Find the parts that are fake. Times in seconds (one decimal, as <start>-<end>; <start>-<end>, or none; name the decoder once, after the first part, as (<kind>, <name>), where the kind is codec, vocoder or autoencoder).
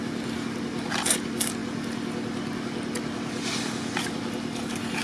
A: none